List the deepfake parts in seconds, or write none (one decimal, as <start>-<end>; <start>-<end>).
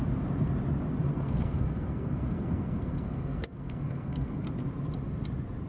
1.1-4.5